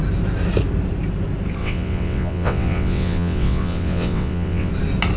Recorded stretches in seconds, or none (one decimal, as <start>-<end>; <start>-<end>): 0.0-1.6; 4.7-5.2

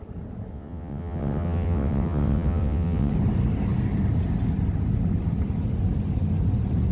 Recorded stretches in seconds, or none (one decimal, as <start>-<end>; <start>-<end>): 0.0-0.5; 3.1-6.9

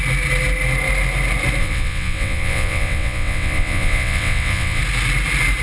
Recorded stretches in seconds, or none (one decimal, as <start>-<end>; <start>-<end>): 0.0-1.6; 4.8-5.6

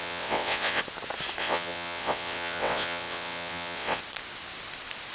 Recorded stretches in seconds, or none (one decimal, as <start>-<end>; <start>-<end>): 0.8-1.4; 4.0-5.1

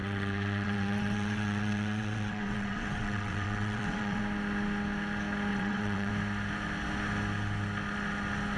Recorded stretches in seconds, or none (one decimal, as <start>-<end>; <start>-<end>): 4.2-5.5; 6.1-8.6

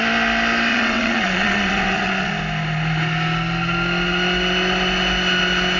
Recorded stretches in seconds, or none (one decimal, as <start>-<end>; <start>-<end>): 0.0-0.7; 2.3-5.8